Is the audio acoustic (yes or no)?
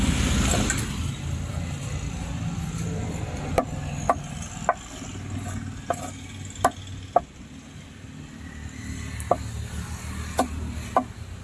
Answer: yes